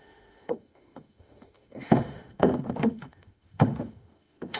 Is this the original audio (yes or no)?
no